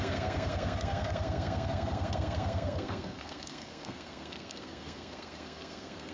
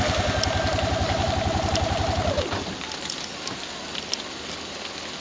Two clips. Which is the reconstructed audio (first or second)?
first